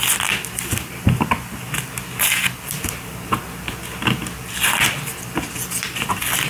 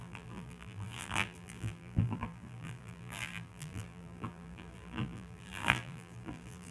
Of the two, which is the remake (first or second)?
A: second